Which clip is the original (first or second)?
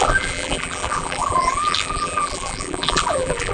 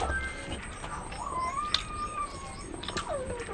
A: second